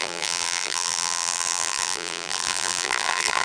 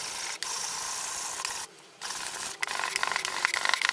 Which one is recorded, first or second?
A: second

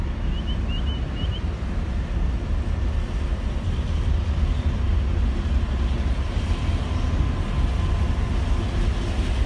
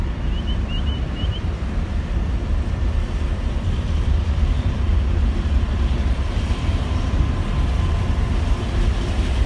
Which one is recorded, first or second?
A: first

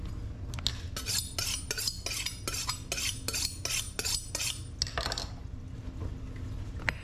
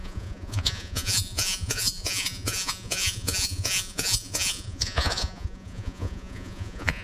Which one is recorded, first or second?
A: first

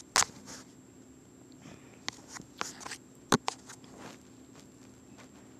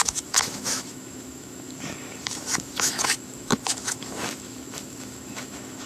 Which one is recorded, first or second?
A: first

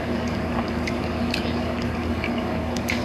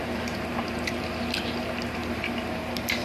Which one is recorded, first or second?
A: second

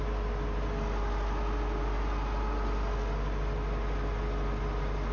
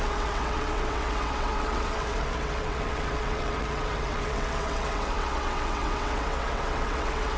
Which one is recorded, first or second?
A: first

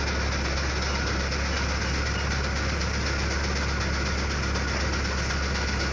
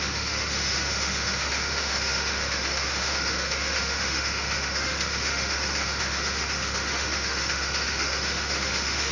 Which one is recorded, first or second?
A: first